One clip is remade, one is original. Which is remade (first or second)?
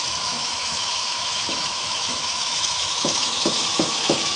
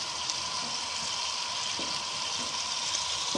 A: first